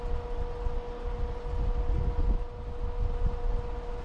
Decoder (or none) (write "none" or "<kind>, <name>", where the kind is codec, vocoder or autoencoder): none